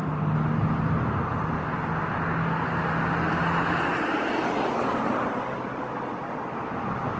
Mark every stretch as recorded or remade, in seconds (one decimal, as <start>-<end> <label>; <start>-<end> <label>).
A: 0.0-7.2 recorded